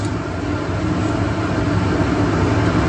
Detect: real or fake real